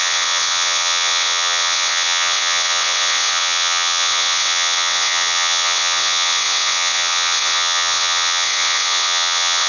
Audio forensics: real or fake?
fake